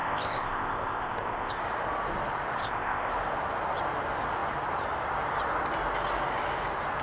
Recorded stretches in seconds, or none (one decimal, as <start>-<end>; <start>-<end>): 1.6-2.6; 3.1-7.0